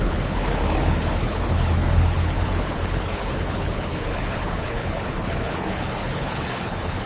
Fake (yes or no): yes